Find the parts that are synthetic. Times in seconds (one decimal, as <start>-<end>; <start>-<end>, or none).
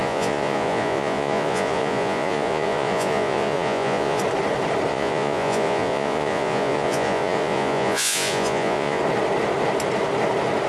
0.0-4.2; 4.9-9.0